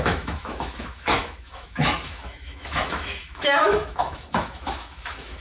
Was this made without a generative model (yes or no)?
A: no